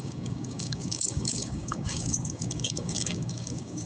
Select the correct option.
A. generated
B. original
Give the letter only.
A